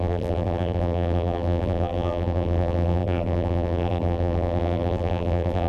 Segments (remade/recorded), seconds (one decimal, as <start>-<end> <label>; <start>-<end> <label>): 0.0-5.7 remade

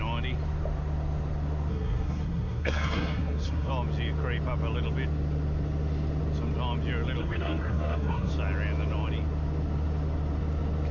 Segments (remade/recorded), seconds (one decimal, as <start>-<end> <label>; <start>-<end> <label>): 0.0-1.7 recorded; 1.7-3.7 remade; 3.7-7.2 recorded; 7.2-8.3 remade; 8.3-10.9 recorded

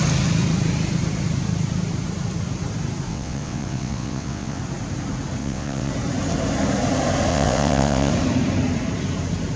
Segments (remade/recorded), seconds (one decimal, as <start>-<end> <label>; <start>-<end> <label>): 0.0-3.1 recorded; 3.1-4.6 remade; 4.6-5.4 recorded; 5.4-5.9 remade; 5.9-7.3 recorded; 7.3-8.1 remade; 8.1-9.6 recorded

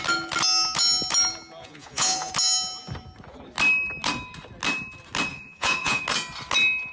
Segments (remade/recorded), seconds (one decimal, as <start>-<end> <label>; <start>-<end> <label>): 0.0-1.6 recorded; 1.6-2.3 remade; 2.3-5.3 recorded; 5.3-6.0 remade; 6.0-6.9 recorded

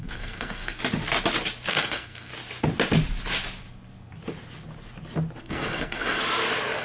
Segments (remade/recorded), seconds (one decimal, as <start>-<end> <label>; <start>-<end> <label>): 0.0-0.8 remade; 0.8-1.7 recorded; 1.7-2.3 remade; 2.3-5.4 recorded; 5.4-6.2 remade; 6.2-6.8 recorded